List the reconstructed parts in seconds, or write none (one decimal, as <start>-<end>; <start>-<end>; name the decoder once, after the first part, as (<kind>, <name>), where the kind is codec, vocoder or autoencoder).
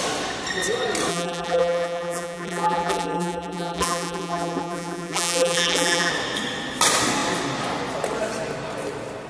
1.1-6.1 (vocoder, BigVGAN v2)